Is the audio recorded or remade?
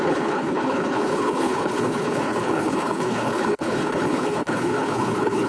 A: remade